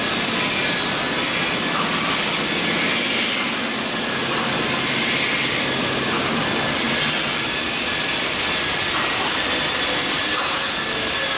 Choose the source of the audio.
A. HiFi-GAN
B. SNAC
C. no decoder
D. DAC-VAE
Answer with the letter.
C